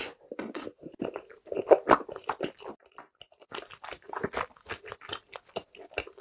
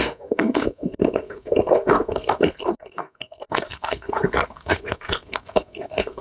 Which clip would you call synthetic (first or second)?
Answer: second